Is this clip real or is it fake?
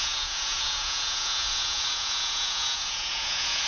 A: fake